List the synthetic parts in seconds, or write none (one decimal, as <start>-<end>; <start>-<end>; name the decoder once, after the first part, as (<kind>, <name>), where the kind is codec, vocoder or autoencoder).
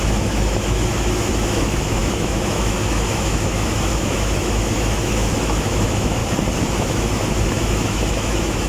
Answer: 0.0-6.2 (autoencoder, DAC-VAE); 6.8-8.7